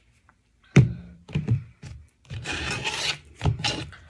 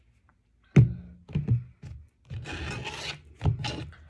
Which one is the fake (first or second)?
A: first